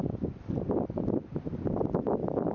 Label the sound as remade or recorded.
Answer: recorded